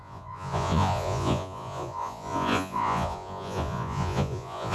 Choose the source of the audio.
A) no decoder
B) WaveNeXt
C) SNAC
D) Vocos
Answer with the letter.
D